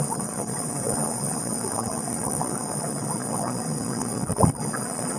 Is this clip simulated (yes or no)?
yes